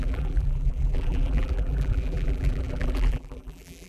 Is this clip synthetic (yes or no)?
yes